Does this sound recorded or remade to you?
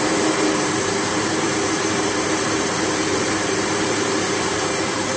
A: remade